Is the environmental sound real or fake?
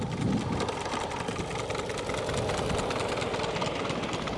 real